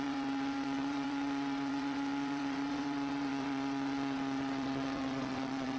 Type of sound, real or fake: fake